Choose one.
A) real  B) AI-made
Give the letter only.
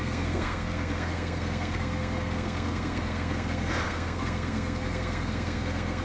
B